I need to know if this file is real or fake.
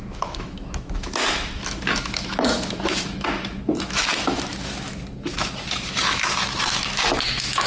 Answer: fake